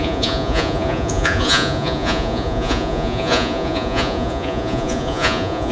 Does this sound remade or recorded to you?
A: remade